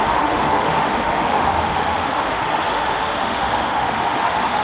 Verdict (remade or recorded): remade